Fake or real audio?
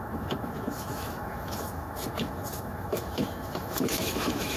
fake